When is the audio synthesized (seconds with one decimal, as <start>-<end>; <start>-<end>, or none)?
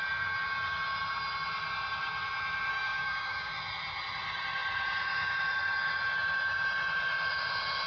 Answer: 2.7-3.5